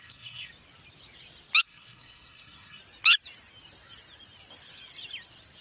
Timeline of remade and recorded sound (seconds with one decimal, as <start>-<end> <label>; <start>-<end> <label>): 0.0-0.5 remade; 0.5-1.6 recorded; 1.6-2.8 remade; 2.8-5.6 recorded